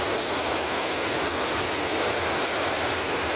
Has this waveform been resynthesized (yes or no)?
no